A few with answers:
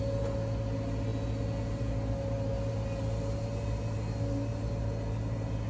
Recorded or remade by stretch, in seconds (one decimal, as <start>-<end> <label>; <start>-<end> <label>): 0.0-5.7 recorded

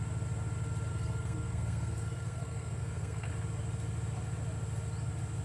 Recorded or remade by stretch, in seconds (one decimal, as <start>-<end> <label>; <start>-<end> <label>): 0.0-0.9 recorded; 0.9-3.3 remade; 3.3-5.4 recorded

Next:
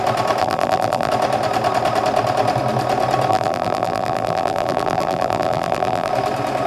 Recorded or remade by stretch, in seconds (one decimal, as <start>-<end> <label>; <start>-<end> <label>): 0.0-0.4 recorded; 0.4-1.1 remade; 1.1-3.3 recorded; 3.3-6.1 remade; 6.1-6.7 recorded